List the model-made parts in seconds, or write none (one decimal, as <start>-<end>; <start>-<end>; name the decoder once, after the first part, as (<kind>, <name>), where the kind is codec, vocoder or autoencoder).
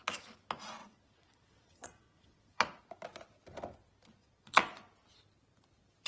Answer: 0.8-2.8 (vocoder, Vocos); 4.2-4.9